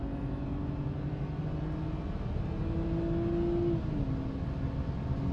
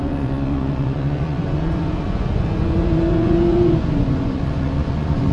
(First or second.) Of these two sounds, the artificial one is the second